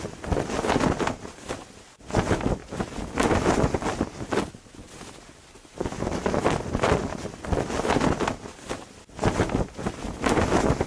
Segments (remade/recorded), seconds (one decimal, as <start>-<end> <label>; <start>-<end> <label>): 0.0-10.9 recorded